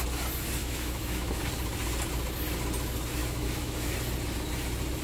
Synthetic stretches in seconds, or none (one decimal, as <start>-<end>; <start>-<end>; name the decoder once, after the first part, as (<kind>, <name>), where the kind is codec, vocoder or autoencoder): 0.6-1.4 (autoencoder, DAC-VAE); 3.2-3.9